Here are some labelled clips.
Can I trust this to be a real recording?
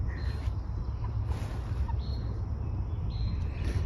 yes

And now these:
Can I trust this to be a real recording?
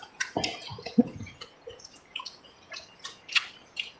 no